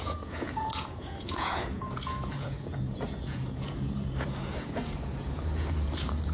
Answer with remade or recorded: remade